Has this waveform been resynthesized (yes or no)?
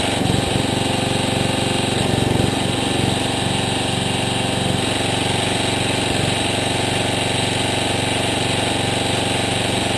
no